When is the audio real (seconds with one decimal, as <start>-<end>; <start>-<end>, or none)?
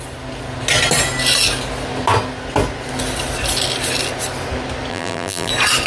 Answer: 0.0-4.9; 5.5-5.9